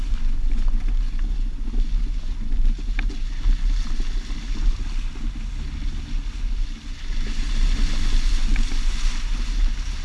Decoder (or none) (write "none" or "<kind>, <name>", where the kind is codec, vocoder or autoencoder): none